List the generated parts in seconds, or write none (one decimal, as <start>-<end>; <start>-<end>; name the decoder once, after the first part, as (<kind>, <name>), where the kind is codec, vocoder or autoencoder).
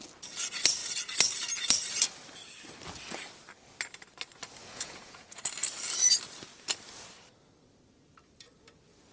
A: 4.6-5.4 (vocoder, Vocos)